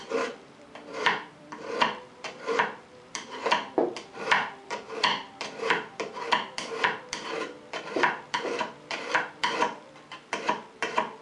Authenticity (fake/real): fake